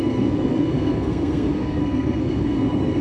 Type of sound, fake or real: fake